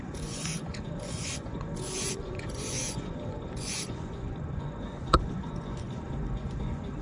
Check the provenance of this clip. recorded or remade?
remade